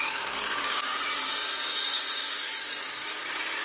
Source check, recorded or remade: remade